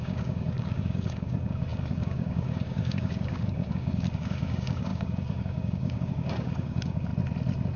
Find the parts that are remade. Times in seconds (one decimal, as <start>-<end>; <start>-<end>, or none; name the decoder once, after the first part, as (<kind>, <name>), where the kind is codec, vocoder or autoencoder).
0.0-7.1 (codec, DAC)